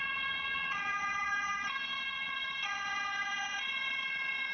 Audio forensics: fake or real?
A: fake